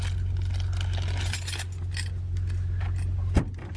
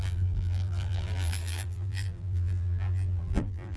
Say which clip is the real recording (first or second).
first